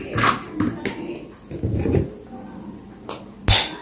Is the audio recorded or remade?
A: recorded